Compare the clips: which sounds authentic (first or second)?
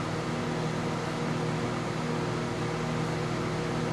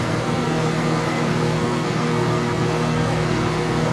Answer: first